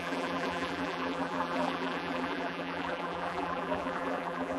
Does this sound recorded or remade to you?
remade